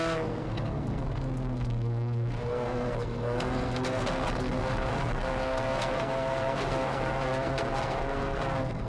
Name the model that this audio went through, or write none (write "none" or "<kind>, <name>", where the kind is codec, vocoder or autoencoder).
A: codec, SNAC